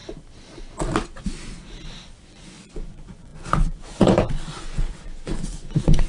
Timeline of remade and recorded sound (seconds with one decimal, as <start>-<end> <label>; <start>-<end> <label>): 0.0-2.2 recorded; 2.2-6.1 remade